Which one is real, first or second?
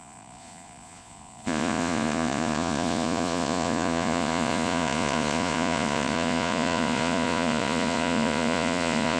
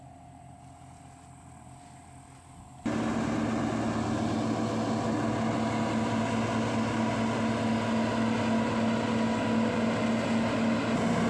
second